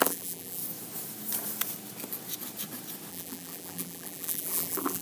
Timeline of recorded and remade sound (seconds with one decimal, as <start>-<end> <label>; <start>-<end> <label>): 0.0-0.6 remade; 0.6-3.1 recorded; 3.1-5.0 remade